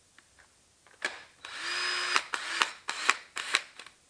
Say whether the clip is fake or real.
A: real